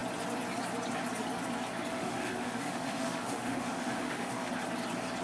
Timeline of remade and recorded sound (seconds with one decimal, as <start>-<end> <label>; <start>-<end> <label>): 0.0-1.9 recorded; 1.9-4.5 remade; 4.5-5.2 recorded